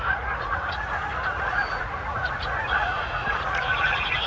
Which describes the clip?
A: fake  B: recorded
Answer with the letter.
A